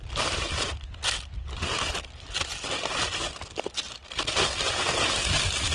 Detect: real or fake real